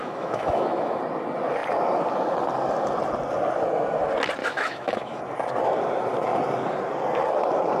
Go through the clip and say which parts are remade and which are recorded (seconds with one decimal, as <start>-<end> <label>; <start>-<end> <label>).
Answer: 0.0-1.0 remade; 1.0-4.4 recorded; 4.4-5.2 remade; 5.2-7.8 recorded